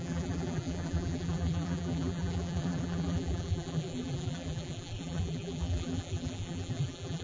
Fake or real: fake